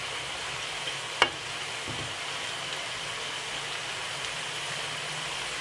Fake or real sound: real